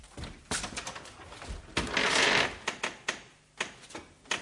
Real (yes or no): yes